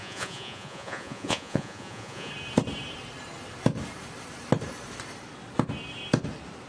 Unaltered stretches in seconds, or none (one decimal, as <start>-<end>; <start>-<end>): 2.3-6.7